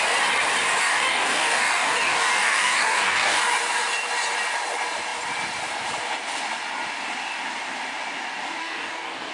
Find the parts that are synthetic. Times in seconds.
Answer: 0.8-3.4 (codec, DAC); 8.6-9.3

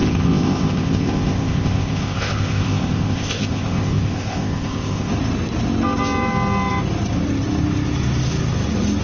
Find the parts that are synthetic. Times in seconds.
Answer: 0.0-5.1 (codec, ZipCodec)

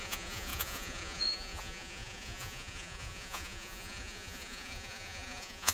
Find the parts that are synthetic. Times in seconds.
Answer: 0.0-5.7 (vocoder, Vocos)

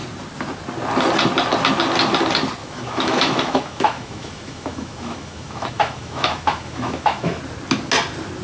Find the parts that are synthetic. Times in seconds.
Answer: 2.6-7.4 (autoencoder, DAC-VAE)

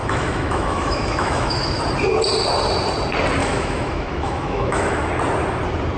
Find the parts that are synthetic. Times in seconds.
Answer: 0.0-1.8 (autoencoder, DAC-VAE); 3.4-5.1

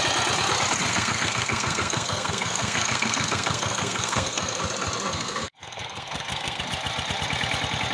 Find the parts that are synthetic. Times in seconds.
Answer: 0.9-4.6 (codec, SNAC); 5.1-6.6

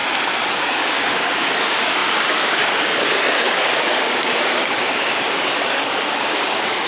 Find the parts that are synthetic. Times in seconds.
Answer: 0.5-6.9 (codec, DAC)

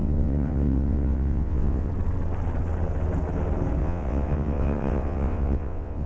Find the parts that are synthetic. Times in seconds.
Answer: 0.0-1.9 (vocoder, WaveNeXt); 3.8-6.1